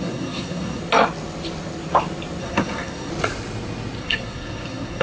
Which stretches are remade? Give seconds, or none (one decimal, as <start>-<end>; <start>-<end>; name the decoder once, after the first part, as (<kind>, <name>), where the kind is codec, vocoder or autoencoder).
0.0-0.8 (codec, SNAC); 2.4-3.1; 4.0-5.0